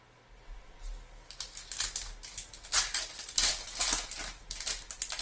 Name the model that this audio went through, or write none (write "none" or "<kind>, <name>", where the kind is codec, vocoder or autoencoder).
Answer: none